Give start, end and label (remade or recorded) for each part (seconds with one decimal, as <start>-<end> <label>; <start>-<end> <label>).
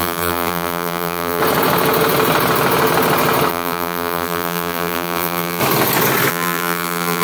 0.0-1.4 remade; 1.4-3.5 recorded; 3.5-5.6 remade; 5.6-6.3 recorded; 6.3-7.2 remade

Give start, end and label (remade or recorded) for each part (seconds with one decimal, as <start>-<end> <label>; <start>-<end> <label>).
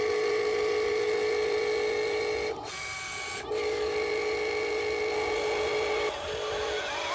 0.0-7.1 recorded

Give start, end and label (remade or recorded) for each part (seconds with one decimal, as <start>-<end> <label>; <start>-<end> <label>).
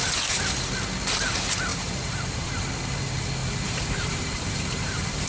0.0-1.7 recorded; 1.7-2.5 remade; 2.5-3.4 recorded; 3.4-5.3 remade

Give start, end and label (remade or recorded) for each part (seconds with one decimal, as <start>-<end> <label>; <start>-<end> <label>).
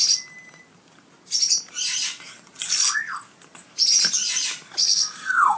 0.0-4.8 recorded; 4.8-5.6 remade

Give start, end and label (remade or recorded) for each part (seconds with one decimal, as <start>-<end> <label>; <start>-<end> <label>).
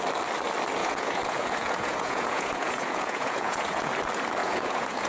0.0-0.8 recorded; 0.8-3.9 remade; 3.9-4.4 recorded; 4.4-5.1 remade